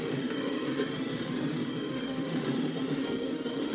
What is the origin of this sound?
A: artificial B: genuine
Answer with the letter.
A